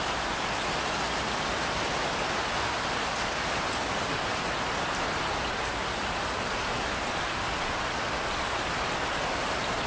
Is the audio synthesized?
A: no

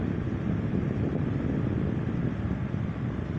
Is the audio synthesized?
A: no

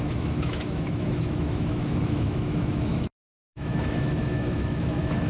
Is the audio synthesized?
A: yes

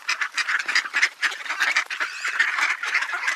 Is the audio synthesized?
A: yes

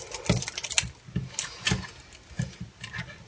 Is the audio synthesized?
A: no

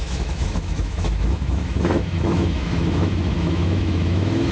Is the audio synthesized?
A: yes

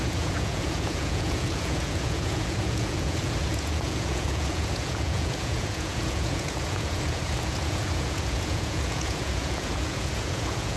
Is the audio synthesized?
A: yes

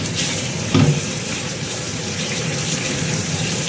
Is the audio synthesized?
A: yes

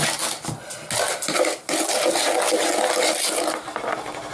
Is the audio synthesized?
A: no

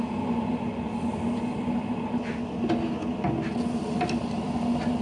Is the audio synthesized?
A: no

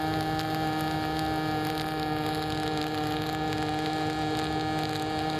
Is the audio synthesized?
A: no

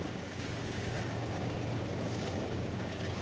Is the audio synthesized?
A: yes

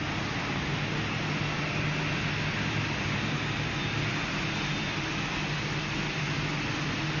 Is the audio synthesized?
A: no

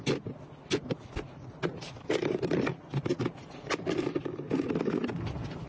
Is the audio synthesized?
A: no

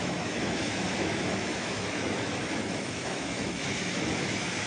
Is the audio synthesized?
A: yes